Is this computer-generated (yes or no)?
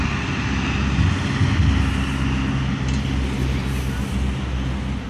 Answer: no